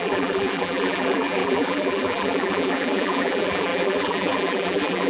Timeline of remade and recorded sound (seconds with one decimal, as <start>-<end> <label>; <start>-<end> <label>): 0.0-5.1 remade